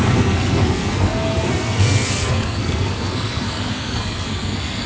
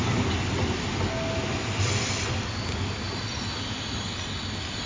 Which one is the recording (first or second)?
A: second